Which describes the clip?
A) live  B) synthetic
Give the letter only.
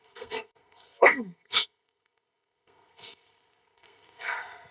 B